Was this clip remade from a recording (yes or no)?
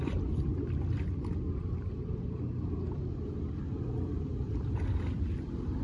no